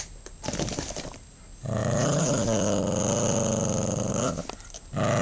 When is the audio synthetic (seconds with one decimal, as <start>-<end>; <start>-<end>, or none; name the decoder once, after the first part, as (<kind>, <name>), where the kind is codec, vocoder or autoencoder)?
1.8-4.1 (vocoder, BigVGAN v2)